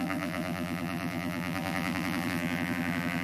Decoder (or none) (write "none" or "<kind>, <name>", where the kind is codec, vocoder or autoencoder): vocoder, BigVGAN v2